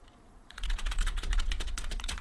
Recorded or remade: remade